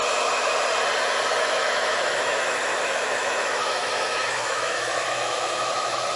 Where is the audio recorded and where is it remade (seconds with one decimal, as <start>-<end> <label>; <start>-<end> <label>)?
0.0-1.4 recorded; 1.4-6.2 remade